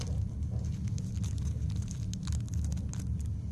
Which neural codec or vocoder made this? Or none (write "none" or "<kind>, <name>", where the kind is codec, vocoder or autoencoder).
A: none